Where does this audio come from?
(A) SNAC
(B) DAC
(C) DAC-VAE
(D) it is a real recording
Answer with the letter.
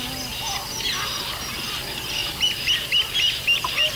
D